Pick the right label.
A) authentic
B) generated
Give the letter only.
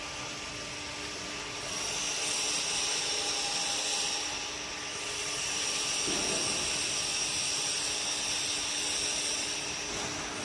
A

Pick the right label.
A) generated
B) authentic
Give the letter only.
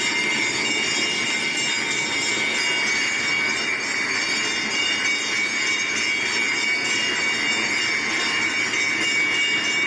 B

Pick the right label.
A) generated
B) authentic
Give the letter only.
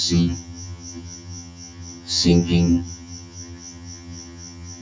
A